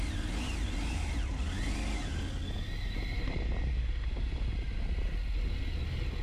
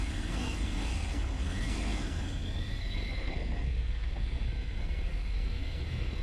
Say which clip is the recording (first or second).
first